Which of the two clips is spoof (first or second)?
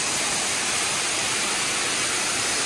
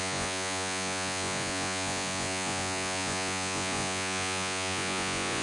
second